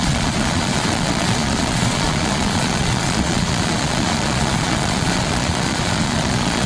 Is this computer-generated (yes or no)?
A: yes